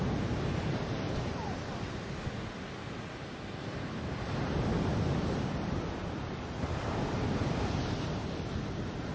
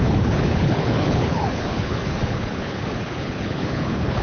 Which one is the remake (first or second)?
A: second